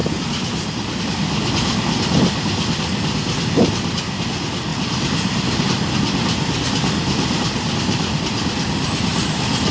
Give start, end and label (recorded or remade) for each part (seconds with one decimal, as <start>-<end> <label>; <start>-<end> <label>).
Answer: 0.0-4.7 recorded; 4.7-5.7 remade; 5.7-9.1 recorded; 9.1-9.7 remade